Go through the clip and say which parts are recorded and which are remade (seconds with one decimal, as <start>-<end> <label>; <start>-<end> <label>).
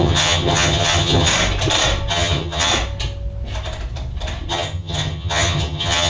0.0-1.3 remade; 1.3-2.1 recorded; 2.1-2.7 remade; 2.7-4.5 recorded; 4.5-6.1 remade